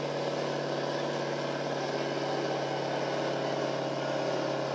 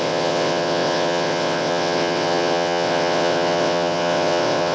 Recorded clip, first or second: first